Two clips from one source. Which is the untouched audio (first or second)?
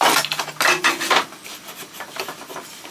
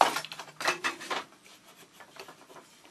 first